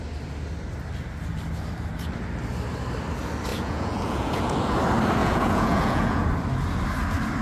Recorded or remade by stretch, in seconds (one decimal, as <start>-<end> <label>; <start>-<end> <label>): 0.0-3.5 recorded; 3.5-4.8 remade; 4.8-5.2 recorded; 5.2-6.2 remade; 6.2-7.4 recorded